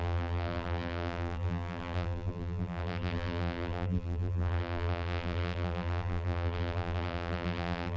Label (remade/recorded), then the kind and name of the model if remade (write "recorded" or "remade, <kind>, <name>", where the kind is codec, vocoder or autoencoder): remade, vocoder, BigVGAN v2